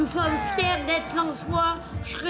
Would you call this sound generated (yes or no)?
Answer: no